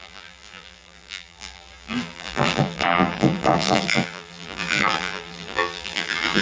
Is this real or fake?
fake